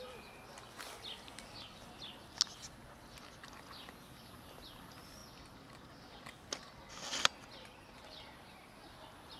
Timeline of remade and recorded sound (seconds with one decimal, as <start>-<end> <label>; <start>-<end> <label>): 0.0-9.4 recorded